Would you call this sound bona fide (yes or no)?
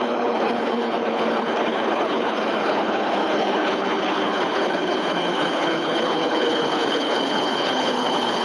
no